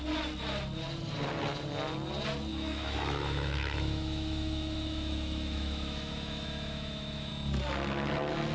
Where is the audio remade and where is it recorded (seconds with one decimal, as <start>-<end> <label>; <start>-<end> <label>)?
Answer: 0.0-2.5 recorded; 2.5-7.3 remade; 7.3-8.5 recorded